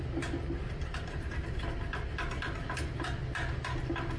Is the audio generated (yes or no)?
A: no